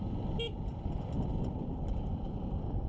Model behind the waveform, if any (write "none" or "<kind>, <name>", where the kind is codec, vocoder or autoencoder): none